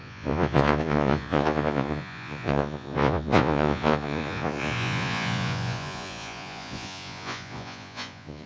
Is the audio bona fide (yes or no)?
no